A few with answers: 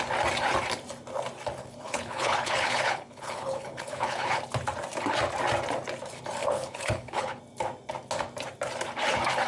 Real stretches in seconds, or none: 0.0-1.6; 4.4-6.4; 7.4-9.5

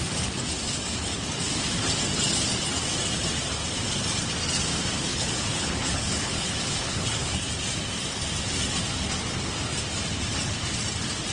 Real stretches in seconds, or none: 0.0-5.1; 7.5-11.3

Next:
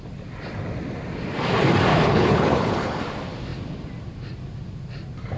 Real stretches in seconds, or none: 0.0-1.9; 3.0-5.4